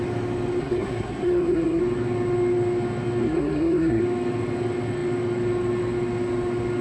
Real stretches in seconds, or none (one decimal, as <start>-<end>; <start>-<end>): 0.0-0.6; 1.8-3.2; 4.0-6.8